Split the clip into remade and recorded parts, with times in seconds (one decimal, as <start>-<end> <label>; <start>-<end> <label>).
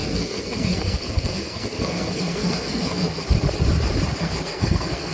0.0-3.2 remade; 3.2-4.2 recorded; 4.2-5.1 remade